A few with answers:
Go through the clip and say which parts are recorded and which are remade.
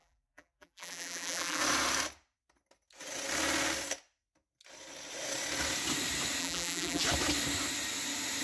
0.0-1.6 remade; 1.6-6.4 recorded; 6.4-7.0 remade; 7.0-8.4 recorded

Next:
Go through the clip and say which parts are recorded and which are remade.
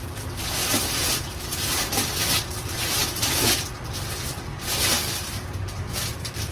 0.0-6.5 recorded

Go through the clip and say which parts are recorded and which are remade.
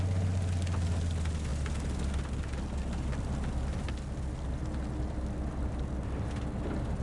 0.0-7.0 recorded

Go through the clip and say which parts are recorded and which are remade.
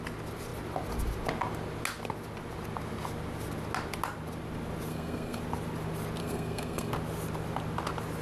0.0-4.9 recorded; 4.9-5.4 remade; 5.4-6.2 recorded; 6.2-6.9 remade; 6.9-8.2 recorded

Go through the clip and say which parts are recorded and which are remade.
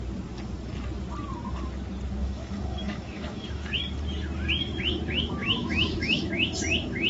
0.0-2.2 recorded; 2.2-3.8 remade; 3.8-5.4 recorded; 5.4-6.3 remade; 6.3-7.1 recorded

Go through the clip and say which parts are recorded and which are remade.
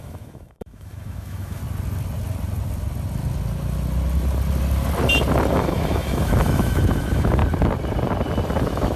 0.0-1.6 remade; 1.6-5.5 recorded; 5.5-7.4 remade; 7.4-8.6 recorded; 8.6-9.0 remade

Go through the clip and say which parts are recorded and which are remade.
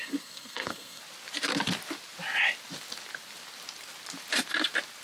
0.0-1.0 remade; 1.0-5.0 recorded